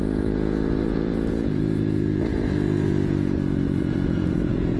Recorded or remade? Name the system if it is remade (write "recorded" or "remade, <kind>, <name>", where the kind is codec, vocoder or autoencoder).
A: remade, vocoder, Vocos